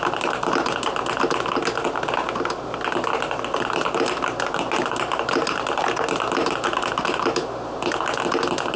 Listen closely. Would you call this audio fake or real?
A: real